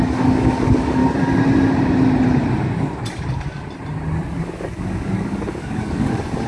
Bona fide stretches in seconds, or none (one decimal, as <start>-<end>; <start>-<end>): 1.0-4.3